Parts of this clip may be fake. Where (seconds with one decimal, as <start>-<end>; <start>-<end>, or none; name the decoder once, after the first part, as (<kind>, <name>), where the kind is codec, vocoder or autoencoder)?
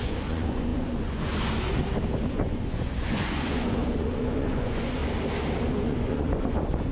0.0-1.8 (vocoder, Vocos); 2.3-5.0; 5.7-6.9